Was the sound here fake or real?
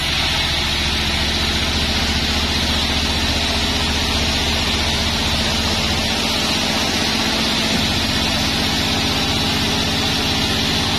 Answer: real